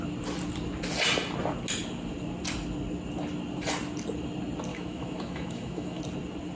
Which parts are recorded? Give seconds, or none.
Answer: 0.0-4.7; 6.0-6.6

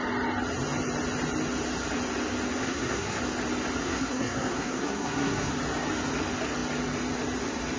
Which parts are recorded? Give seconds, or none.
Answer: 0.0-2.6; 3.2-3.8; 5.5-7.8

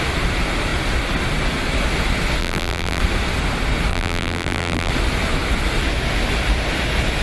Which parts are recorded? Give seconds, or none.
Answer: 0.0-2.4; 3.0-3.9; 4.9-7.2